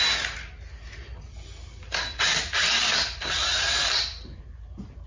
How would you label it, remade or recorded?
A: recorded